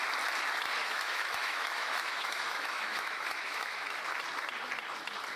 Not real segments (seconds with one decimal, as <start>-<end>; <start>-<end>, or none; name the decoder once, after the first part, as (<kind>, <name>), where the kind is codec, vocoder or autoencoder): 0.8-4.0 (autoencoder, DAC-VAE)